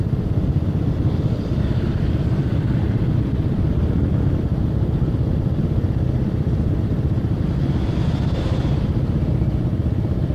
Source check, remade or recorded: remade